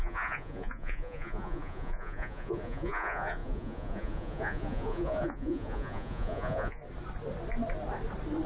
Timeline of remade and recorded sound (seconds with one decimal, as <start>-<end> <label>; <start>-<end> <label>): 0.0-6.8 remade; 6.8-8.5 recorded